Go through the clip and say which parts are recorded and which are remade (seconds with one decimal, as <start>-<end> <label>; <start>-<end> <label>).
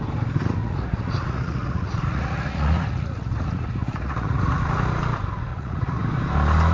0.0-0.6 recorded; 0.6-4.6 remade; 4.6-5.5 recorded; 5.5-6.0 remade; 6.0-6.7 recorded